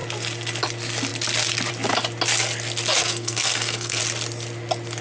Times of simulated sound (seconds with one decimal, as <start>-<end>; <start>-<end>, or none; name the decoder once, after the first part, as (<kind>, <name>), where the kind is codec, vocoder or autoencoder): 3.0-4.0 (codec, SNAC)